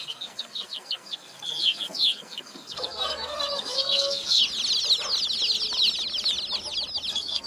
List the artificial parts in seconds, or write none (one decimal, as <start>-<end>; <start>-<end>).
0.0-4.4; 7.1-7.5